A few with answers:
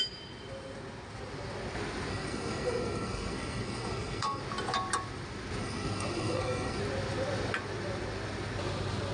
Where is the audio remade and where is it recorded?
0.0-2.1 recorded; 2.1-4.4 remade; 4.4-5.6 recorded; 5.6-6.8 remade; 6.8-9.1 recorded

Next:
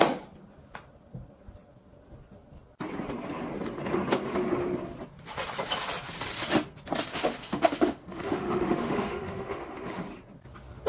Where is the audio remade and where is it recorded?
0.0-7.1 recorded; 7.1-10.0 remade; 10.0-10.9 recorded

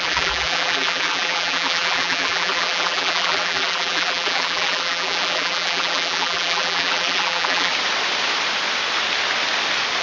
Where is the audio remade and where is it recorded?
0.0-7.7 remade; 7.7-10.0 recorded